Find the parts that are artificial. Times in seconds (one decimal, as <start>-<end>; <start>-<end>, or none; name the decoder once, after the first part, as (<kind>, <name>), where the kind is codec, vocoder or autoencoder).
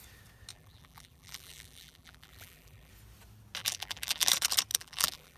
0.5-2.9 (vocoder, BigVGAN v2); 3.6-4.3; 4.7-5.4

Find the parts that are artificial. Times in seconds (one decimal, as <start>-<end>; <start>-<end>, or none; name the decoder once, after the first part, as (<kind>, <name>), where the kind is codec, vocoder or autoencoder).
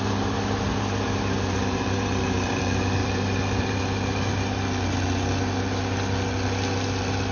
0.7-2.6 (vocoder, BigVGAN v2); 3.0-3.8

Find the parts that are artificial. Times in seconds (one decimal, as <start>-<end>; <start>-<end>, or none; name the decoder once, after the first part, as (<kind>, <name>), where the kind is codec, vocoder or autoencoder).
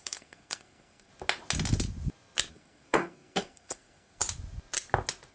0.0-1.1 (codec, SNAC); 2.5-4.2